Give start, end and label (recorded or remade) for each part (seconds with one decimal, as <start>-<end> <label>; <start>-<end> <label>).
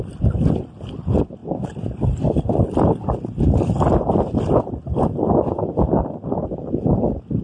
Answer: 0.0-7.4 recorded